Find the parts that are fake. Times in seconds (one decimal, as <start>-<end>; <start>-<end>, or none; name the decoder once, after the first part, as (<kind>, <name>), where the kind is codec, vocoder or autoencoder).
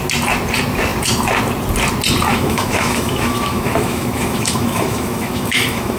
2.3-6.0 (autoencoder, DAC-VAE)